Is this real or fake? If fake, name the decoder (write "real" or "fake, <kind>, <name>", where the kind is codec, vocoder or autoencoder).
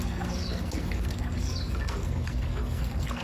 fake, codec, SNAC